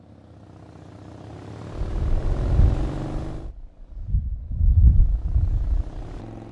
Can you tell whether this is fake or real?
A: real